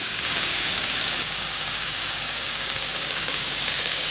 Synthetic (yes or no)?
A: yes